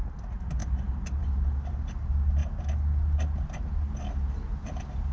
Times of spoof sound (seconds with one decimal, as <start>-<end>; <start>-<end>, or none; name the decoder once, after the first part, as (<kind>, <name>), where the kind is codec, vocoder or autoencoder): none